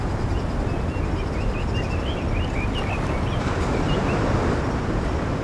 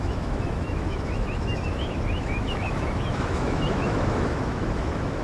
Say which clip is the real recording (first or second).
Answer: first